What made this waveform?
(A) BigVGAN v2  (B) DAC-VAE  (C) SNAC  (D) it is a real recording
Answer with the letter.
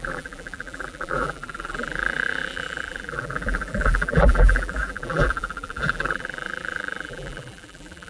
A